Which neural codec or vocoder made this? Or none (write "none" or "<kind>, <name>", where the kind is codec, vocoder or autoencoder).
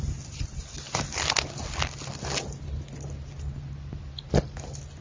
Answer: none